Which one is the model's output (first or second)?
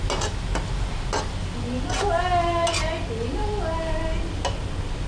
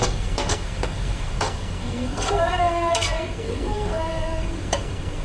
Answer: second